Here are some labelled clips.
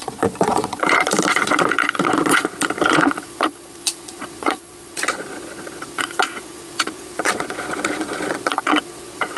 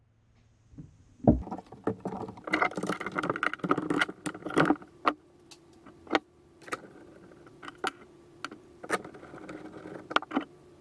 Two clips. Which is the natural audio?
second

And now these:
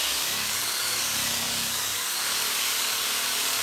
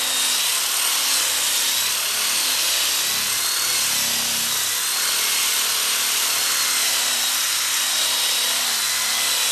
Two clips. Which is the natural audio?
second